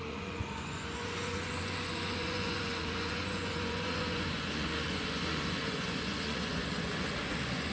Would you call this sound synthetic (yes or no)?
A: yes